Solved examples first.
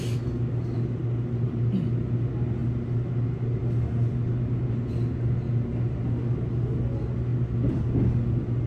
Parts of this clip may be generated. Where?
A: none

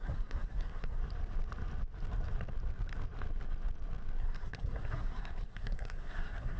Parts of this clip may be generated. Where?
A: 0.0-1.0 (codec, SNAC); 4.2-6.6

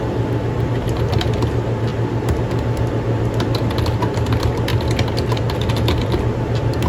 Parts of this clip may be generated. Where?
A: none

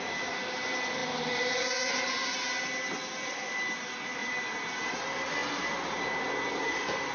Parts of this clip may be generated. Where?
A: 4.2-4.9 (vocoder, BigVGAN v2)